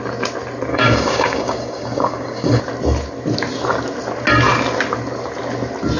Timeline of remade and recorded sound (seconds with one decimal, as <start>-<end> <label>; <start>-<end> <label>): 0.0-0.7 recorded; 0.7-2.6 remade; 2.6-6.0 recorded